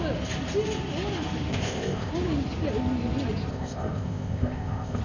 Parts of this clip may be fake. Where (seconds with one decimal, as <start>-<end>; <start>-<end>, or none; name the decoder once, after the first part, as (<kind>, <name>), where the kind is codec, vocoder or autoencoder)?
1.5-2.1 (codec, ZipCodec); 3.5-5.0